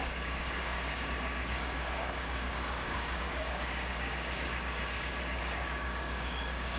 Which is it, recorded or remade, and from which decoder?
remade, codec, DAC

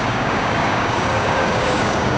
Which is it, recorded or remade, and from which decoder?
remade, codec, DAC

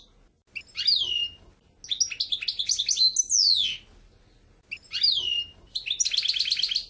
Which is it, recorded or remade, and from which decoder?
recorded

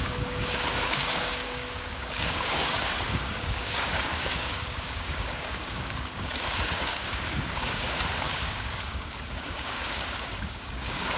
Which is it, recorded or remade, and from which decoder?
remade, codec, DAC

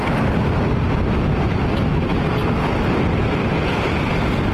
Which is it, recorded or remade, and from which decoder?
recorded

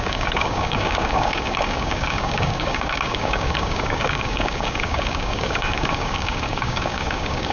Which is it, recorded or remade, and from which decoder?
remade, codec, DAC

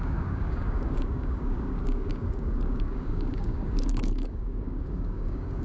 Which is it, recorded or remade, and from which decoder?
remade, codec, DAC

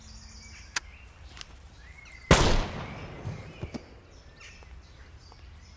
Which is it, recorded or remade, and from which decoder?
recorded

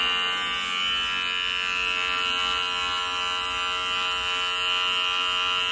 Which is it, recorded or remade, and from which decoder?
recorded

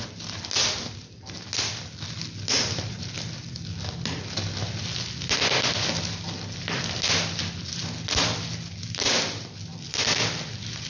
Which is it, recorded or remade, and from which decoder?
recorded